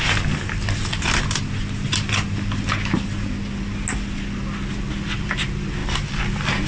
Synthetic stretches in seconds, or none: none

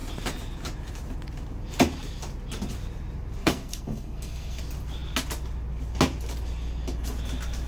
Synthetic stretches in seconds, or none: 3.4-4.6 (codec, SNAC)

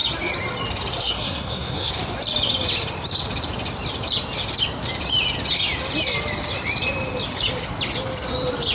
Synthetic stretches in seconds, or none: 1.0-1.9 (codec, SNAC)

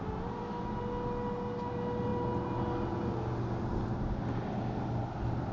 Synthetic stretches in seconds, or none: none

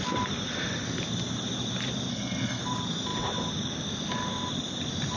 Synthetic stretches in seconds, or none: 2.1-2.6 (codec, SNAC)

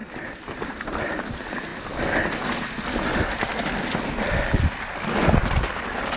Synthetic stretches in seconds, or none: none

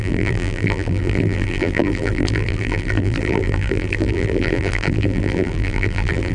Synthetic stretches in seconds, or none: 0.0-6.3 (vocoder, BigVGAN v2)

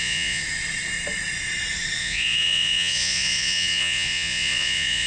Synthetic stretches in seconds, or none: 0.0-0.4 (vocoder, Vocos); 2.0-5.1